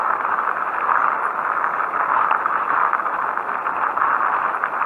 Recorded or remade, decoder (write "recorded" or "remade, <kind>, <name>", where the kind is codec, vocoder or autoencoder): recorded